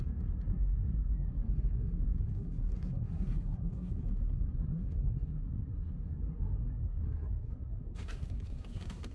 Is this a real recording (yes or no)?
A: no